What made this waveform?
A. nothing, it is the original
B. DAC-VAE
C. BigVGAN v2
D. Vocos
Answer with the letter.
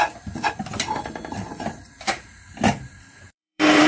C